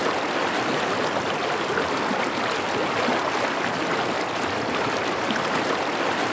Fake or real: real